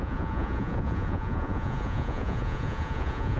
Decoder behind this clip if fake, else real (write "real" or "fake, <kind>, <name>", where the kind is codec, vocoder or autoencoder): fake, vocoder, Vocos